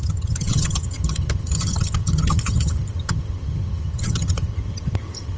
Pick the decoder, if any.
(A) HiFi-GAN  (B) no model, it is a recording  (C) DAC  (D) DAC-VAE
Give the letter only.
A